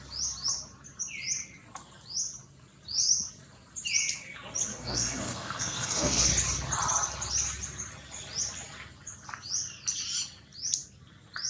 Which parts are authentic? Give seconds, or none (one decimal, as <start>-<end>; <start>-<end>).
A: 0.0-4.7; 6.3-11.5